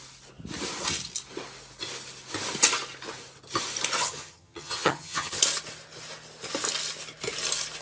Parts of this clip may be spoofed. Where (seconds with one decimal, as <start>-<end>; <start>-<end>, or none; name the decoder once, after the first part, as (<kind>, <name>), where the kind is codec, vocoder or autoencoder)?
4.0-5.4 (vocoder, HiFi-GAN)